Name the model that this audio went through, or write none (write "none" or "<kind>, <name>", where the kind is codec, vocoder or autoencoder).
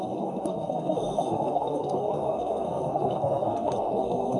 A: codec, SNAC